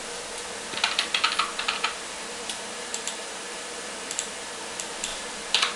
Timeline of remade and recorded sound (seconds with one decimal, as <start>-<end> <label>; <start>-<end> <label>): 0.0-1.5 recorded; 1.5-3.7 remade; 3.7-5.1 recorded; 5.1-5.8 remade